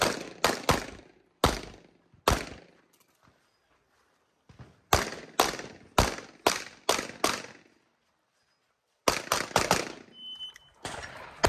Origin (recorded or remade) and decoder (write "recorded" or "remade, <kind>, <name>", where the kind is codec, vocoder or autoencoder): recorded